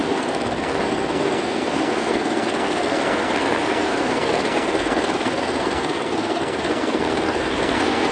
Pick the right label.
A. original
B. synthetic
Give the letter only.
B